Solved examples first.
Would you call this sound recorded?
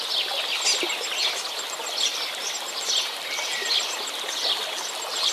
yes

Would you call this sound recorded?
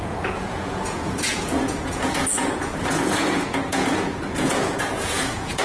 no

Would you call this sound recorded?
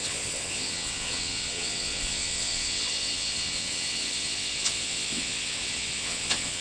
no